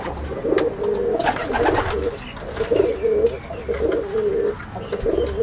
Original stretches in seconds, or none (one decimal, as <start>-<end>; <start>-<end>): 0.0-5.4

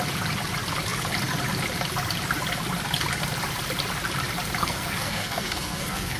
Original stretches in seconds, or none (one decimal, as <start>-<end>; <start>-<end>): 0.0-4.6

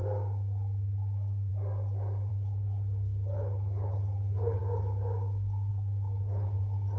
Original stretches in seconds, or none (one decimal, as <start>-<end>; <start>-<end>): 0.0-2.3; 4.6-5.7; 6.6-7.0

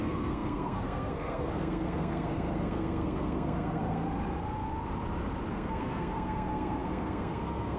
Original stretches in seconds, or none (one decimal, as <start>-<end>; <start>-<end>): 4.0-5.5

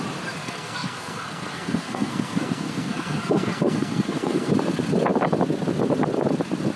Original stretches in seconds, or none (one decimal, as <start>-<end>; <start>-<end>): 0.0-0.4; 4.5-6.8

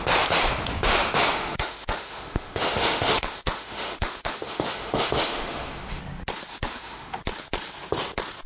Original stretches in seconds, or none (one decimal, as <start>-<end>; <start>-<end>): 0.0-0.9; 6.0-6.5; 7.2-8.5

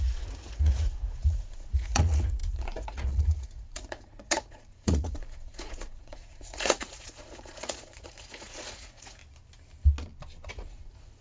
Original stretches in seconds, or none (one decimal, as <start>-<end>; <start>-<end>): 9.2-10.5